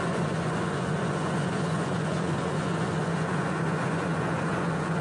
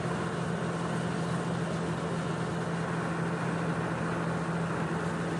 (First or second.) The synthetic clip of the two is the first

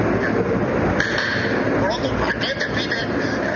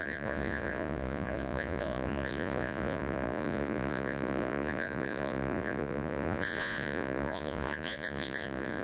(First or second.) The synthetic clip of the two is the second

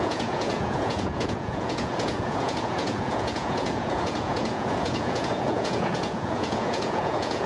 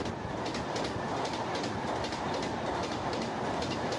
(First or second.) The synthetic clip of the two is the first